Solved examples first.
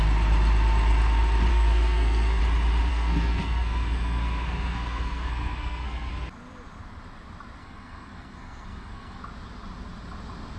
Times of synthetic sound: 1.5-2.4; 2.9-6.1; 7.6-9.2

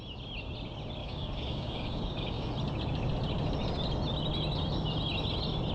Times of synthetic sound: 1.0-2.5

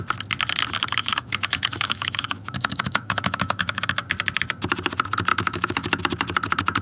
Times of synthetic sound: 1.0-3.9; 5.3-6.0